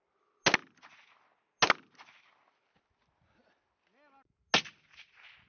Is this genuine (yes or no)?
yes